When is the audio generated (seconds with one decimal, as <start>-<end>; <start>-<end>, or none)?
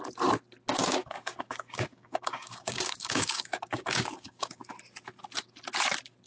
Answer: 0.8-4.6